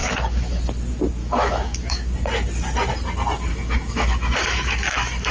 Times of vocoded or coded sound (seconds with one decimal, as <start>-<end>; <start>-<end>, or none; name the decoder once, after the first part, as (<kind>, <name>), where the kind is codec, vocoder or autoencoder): 0.0-0.6 (autoencoder, DAC-VAE); 1.2-2.1; 3.5-5.3